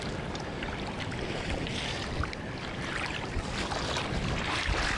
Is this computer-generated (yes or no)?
no